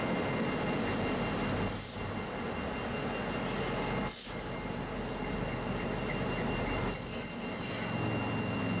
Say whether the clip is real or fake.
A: real